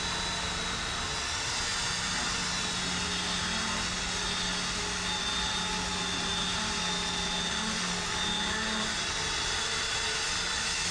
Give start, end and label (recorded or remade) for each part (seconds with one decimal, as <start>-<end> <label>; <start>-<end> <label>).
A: 0.0-10.9 recorded